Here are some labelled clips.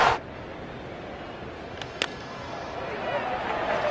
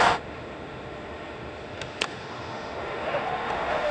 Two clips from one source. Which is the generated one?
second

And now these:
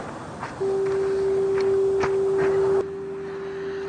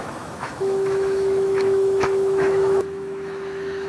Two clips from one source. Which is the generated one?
second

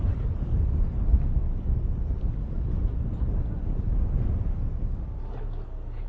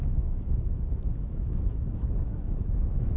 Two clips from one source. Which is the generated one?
second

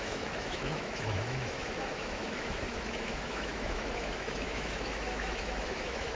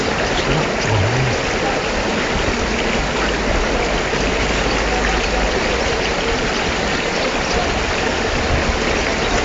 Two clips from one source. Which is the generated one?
first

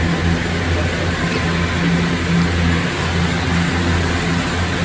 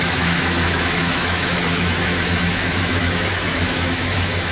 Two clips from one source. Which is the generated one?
second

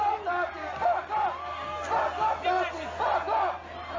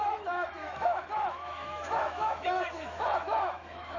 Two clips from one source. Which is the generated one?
second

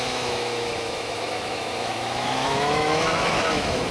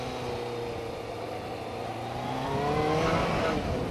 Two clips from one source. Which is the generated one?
first